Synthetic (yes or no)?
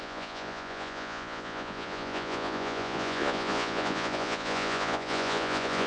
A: yes